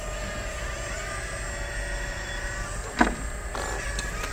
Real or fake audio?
real